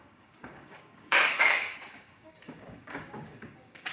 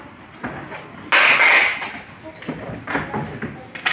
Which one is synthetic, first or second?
first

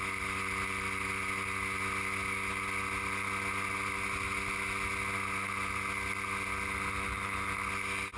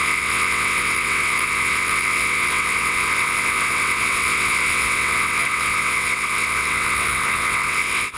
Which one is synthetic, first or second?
second